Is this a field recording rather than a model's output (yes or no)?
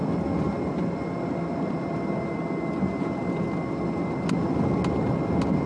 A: yes